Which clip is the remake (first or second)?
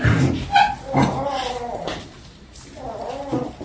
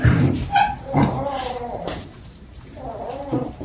second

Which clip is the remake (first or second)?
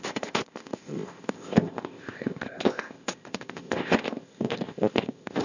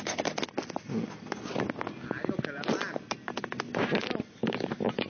first